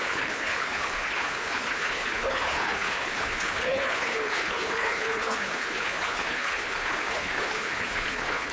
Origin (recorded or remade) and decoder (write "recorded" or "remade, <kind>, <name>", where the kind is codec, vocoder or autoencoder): remade, codec, HILCodec